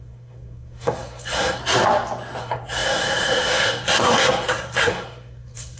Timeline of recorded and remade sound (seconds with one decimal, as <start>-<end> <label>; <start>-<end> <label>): 0.0-1.6 remade; 1.6-2.4 recorded; 2.4-5.8 remade